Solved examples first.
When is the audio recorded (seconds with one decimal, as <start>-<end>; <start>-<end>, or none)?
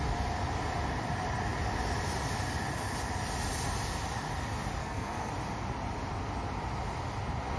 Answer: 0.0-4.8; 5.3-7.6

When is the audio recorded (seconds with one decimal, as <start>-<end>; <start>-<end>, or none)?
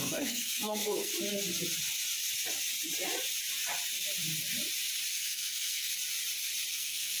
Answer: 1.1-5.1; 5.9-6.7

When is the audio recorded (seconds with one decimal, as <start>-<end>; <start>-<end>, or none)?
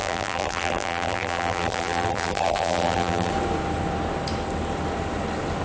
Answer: 3.3-5.6